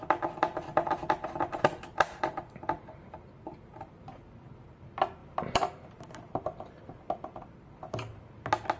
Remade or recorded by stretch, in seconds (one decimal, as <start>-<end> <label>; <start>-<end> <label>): 0.0-5.2 recorded; 5.2-8.2 remade; 8.2-8.8 recorded